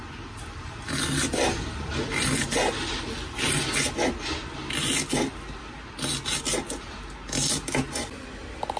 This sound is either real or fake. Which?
real